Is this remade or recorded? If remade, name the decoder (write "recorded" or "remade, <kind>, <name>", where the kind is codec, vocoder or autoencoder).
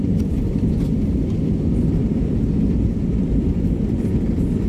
remade, vocoder, BigVGAN v2